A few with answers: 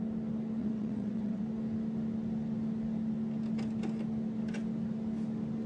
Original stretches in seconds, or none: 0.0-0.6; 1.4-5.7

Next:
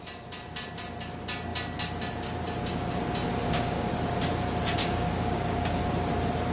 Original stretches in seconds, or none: 0.0-3.3; 3.9-4.8; 5.8-6.5

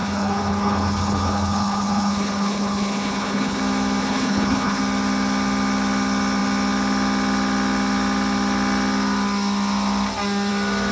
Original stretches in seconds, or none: 3.6-4.0; 4.8-10.9

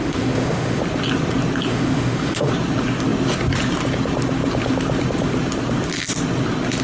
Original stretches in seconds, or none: 0.8-1.7; 2.5-6.8

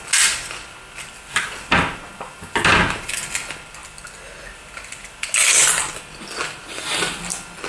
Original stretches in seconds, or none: 0.0-7.7

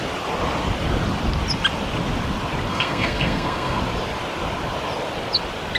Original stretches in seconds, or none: 0.0-2.7; 3.8-5.8

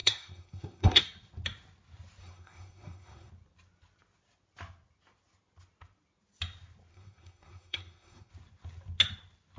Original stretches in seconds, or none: 1.0-2.2; 3.3-6.9; 8.3-9.6